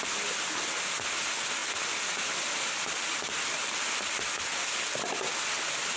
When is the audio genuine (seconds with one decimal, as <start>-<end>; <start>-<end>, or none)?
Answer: 0.0-6.0